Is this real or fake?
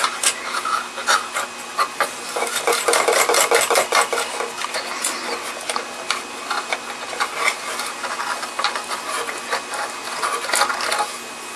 real